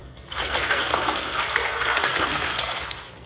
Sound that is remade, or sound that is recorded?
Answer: remade